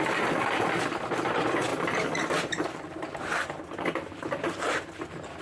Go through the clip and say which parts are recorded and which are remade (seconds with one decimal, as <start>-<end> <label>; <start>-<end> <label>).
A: 0.0-1.7 recorded; 1.7-4.9 remade; 4.9-5.4 recorded